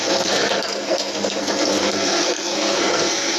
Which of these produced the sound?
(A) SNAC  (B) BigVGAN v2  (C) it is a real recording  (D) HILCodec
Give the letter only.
A